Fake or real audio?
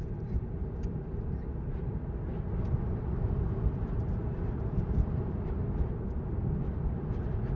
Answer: real